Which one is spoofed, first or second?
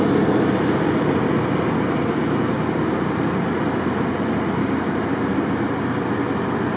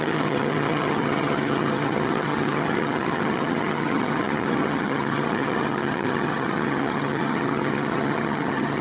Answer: second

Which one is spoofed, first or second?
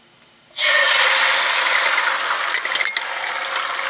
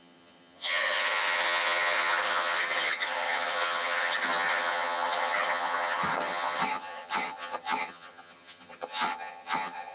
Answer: second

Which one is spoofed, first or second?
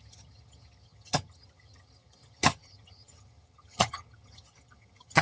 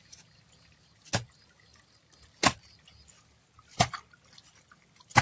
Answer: first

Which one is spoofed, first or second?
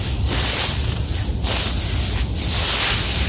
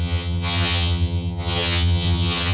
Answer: second